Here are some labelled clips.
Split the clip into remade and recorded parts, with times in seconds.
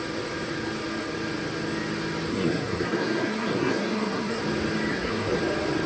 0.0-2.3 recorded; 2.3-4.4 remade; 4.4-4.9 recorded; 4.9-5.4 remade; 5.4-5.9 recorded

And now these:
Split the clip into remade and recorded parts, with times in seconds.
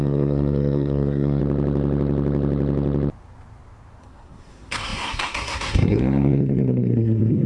0.0-1.4 remade; 1.4-4.0 recorded; 4.0-7.5 remade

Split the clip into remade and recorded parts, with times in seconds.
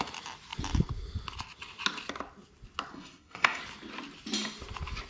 0.0-2.9 recorded; 2.9-3.6 remade; 3.6-5.1 recorded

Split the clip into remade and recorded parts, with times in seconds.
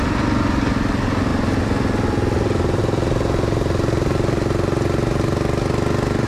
0.0-6.3 recorded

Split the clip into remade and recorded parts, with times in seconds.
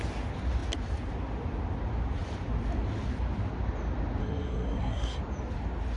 0.0-4.2 recorded; 4.2-5.2 remade; 5.2-6.0 recorded